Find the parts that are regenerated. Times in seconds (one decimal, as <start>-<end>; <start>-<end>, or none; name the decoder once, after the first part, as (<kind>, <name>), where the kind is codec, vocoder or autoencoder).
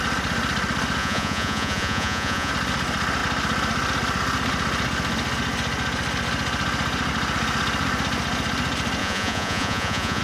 1.0-2.5 (vocoder, Vocos); 9.0-10.2